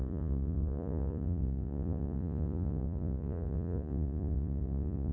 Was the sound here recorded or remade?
remade